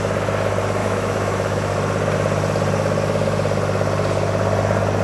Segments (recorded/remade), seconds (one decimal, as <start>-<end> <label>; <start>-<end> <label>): 0.0-0.8 recorded; 0.8-1.7 remade; 1.7-5.0 recorded